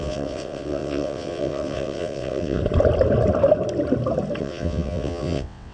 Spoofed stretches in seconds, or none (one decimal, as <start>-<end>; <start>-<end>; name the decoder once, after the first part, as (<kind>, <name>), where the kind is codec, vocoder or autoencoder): 0.0-2.6 (vocoder, WaveNeXt); 4.4-5.7